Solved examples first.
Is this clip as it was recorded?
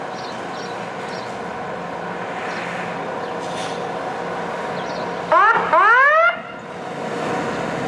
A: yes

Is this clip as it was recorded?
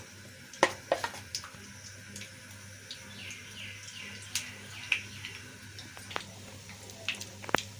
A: yes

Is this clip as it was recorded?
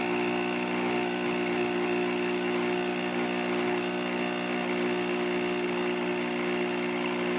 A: yes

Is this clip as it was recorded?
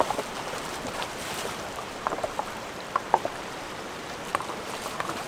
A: no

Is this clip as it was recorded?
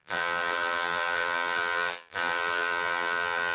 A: no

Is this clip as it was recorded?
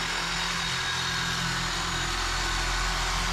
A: yes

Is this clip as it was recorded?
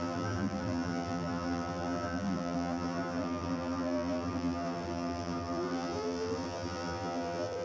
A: no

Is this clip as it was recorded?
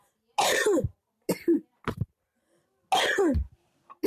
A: yes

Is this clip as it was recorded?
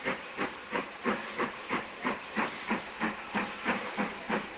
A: no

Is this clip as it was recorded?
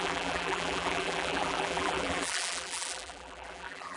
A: no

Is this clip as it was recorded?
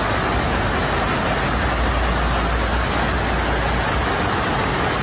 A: yes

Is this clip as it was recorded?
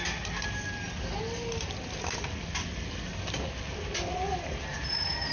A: yes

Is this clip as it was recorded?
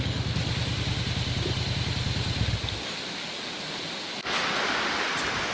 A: yes